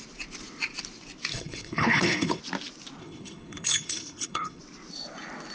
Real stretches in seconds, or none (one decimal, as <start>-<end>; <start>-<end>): 0.0-1.3; 2.4-3.0; 4.6-5.5